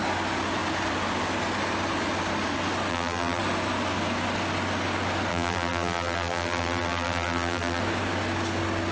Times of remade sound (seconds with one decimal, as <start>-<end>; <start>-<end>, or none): 2.9-3.4; 5.3-7.8